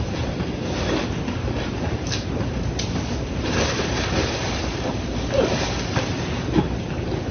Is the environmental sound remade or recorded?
recorded